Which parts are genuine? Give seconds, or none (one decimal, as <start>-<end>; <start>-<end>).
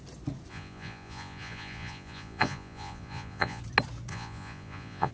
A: 0.0-0.5; 3.6-4.1